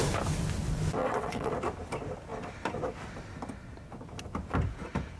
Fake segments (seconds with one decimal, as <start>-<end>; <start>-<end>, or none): 1.0-1.5